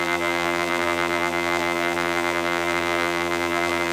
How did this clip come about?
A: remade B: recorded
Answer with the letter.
A